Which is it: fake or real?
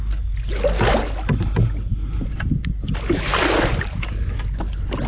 real